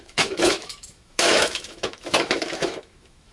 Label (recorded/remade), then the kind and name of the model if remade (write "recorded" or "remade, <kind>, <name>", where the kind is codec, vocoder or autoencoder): remade, autoencoder, DAC-VAE